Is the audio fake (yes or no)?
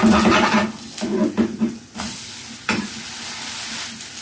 no